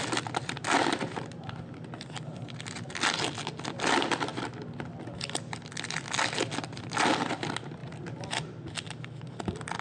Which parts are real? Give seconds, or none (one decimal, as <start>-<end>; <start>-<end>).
0.0-9.8